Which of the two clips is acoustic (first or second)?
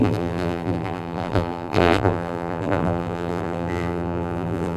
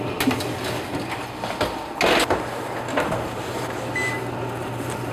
second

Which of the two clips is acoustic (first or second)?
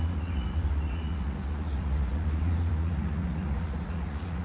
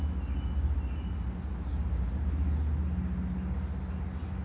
second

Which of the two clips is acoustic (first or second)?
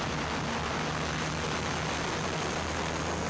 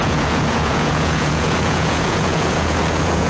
first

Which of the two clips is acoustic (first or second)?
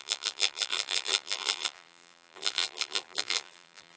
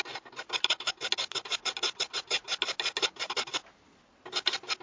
second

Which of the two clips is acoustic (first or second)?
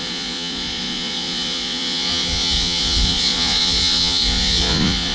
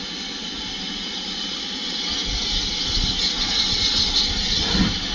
second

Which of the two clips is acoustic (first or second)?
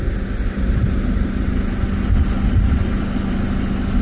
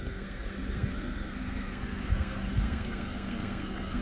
first